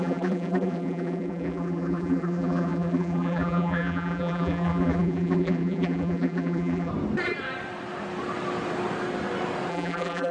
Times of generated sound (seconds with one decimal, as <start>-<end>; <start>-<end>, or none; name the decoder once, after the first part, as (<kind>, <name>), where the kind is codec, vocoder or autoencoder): 0.0-6.9 (vocoder, BigVGAN v2); 9.7-10.3